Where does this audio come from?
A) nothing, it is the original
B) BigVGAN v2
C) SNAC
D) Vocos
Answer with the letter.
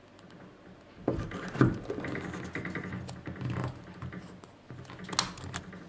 A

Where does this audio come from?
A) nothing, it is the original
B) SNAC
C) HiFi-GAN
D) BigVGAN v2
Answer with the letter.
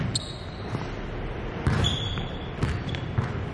A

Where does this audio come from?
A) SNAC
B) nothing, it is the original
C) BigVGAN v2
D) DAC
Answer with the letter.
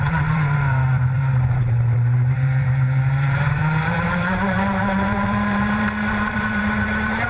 C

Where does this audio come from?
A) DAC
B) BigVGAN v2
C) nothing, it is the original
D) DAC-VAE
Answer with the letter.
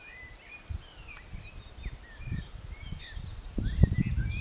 C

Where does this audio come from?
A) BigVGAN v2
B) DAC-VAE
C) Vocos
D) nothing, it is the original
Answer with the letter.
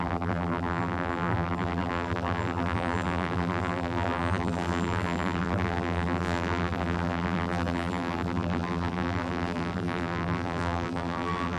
A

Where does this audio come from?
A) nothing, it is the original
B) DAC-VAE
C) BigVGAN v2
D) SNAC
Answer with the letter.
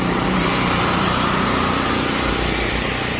C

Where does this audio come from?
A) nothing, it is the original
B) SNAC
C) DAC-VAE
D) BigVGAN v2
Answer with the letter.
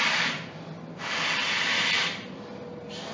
D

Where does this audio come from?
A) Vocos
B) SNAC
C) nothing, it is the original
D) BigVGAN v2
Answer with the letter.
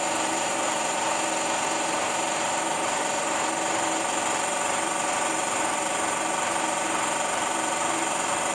D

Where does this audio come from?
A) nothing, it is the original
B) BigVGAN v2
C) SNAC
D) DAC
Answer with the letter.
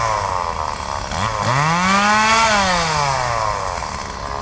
A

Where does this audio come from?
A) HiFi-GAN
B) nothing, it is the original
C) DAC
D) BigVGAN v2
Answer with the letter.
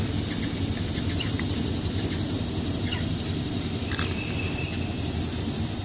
B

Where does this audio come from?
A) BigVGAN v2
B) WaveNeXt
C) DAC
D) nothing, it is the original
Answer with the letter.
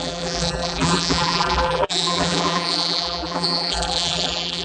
A